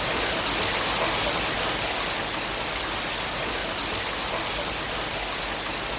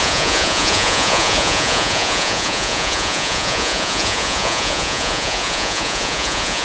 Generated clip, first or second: second